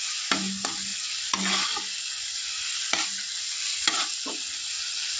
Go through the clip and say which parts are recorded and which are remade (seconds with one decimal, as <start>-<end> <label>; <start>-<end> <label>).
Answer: 0.0-5.2 recorded

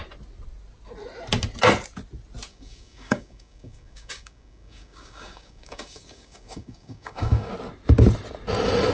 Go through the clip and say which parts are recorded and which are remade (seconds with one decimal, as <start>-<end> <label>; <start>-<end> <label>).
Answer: 0.0-2.5 recorded; 2.5-7.5 remade; 7.5-8.9 recorded

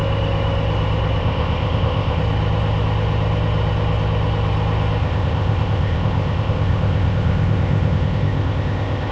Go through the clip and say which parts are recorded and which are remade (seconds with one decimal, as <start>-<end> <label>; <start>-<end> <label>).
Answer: 0.0-1.2 recorded; 1.2-2.2 remade; 2.2-5.0 recorded; 5.0-9.1 remade

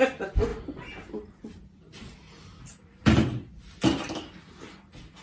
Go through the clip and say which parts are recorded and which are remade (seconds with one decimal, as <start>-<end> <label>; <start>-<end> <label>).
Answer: 0.0-5.2 recorded

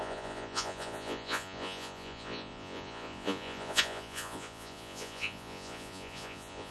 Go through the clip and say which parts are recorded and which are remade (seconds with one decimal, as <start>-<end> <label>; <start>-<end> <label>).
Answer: 0.0-6.7 remade

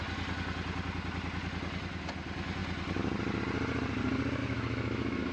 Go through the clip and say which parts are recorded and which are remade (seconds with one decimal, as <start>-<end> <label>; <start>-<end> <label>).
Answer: 0.0-4.4 recorded; 4.4-5.3 remade

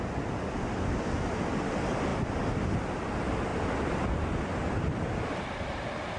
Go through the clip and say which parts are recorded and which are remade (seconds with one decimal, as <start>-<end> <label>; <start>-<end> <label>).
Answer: 0.0-6.2 recorded

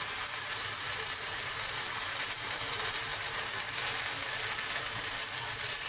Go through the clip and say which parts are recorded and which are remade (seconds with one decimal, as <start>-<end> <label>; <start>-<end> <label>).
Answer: 0.0-3.1 remade; 3.1-5.5 recorded; 5.5-5.9 remade